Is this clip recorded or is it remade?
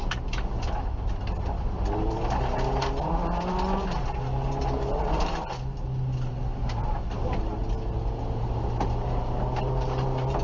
recorded